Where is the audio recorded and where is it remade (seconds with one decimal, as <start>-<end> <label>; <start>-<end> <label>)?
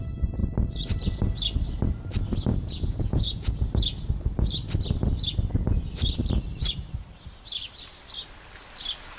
0.0-2.5 recorded; 2.5-3.6 remade; 3.6-9.2 recorded